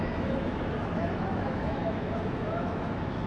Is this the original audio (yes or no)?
no